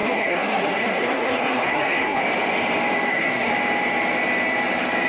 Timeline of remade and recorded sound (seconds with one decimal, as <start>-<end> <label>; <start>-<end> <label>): 0.0-2.2 remade; 2.2-3.1 recorded; 3.1-3.5 remade; 3.5-5.1 recorded